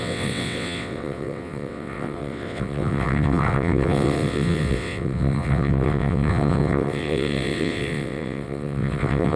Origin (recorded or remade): remade